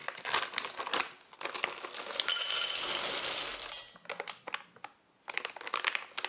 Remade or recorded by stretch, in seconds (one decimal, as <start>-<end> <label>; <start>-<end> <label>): 0.0-6.3 recorded